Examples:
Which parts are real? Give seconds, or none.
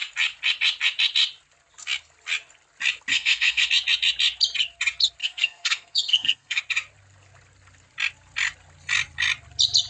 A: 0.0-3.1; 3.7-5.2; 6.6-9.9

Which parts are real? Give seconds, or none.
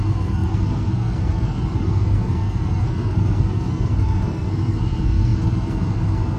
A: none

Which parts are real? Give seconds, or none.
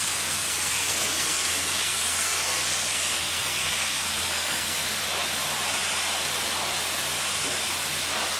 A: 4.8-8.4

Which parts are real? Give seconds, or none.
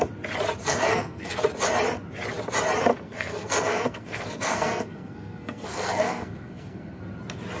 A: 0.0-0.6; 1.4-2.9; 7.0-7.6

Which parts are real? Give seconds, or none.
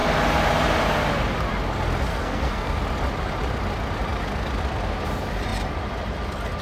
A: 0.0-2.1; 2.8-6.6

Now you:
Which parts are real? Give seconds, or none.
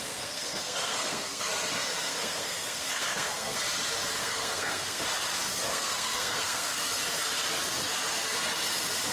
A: 1.5-2.0; 3.6-4.2; 5.0-5.7; 6.9-9.1